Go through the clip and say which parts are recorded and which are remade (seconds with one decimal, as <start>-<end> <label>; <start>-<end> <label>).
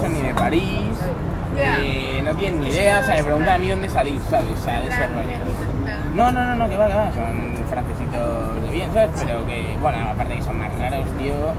0.0-1.6 recorded; 1.6-6.2 remade; 6.2-11.6 recorded